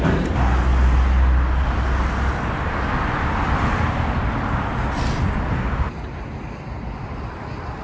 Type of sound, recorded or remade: recorded